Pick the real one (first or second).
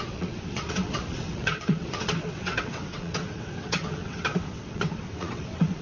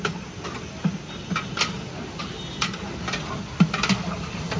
second